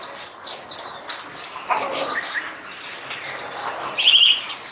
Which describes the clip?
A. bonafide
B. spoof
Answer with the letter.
A